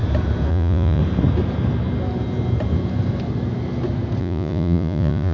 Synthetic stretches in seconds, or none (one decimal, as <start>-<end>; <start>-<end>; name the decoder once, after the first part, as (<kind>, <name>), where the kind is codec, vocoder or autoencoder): 0.5-1.0 (vocoder, Vocos); 4.2-5.3